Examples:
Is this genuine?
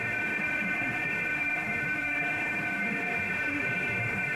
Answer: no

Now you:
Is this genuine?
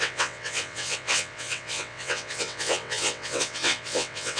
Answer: no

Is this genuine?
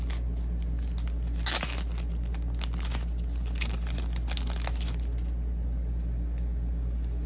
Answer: yes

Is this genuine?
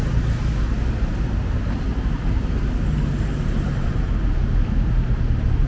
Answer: yes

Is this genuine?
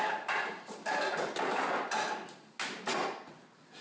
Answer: yes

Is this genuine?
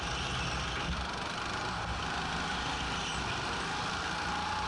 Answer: yes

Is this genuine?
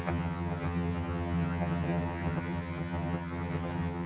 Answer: no